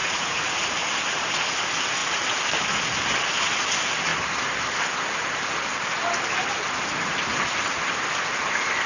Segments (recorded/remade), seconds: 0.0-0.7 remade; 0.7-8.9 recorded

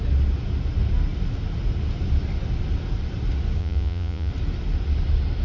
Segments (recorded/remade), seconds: 0.0-3.6 recorded; 3.6-4.3 remade; 4.3-5.4 recorded